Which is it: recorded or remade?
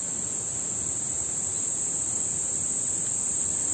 recorded